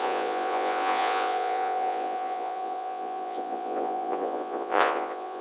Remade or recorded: remade